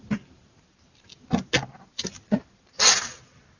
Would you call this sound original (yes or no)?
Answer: yes